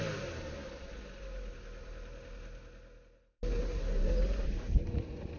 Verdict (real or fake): real